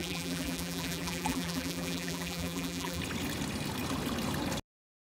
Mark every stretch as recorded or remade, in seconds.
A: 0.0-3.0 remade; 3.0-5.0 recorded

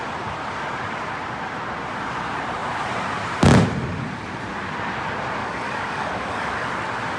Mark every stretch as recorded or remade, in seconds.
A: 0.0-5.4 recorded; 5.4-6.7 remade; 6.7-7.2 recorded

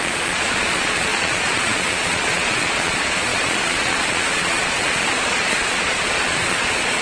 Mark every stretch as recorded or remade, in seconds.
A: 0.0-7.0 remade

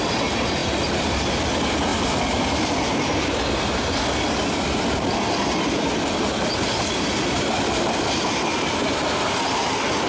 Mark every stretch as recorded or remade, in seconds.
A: 0.0-10.1 recorded

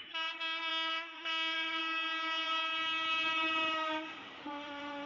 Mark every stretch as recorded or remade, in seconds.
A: 0.0-0.7 recorded; 0.7-1.8 remade; 1.8-4.4 recorded; 4.4-5.1 remade

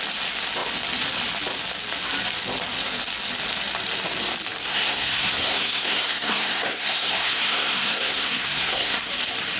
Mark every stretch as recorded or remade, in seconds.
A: 0.0-4.6 recorded; 4.6-9.1 remade; 9.1-9.6 recorded